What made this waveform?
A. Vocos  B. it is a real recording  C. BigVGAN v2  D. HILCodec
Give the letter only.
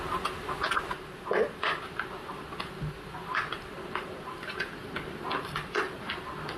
B